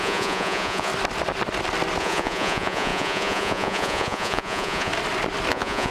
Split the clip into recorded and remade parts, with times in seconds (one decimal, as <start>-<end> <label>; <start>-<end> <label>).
0.0-0.9 remade; 0.9-2.0 recorded; 2.0-4.9 remade; 4.9-5.5 recorded; 5.5-5.9 remade